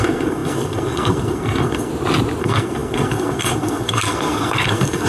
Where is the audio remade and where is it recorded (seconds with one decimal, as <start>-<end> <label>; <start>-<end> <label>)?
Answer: 0.0-1.9 remade; 1.9-2.4 recorded; 2.4-5.1 remade